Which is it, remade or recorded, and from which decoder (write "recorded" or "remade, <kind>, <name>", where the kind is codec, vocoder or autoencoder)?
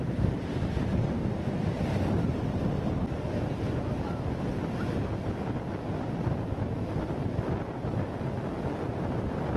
recorded